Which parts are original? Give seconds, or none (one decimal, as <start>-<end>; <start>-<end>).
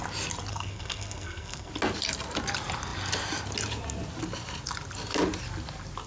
0.0-0.5; 1.7-6.1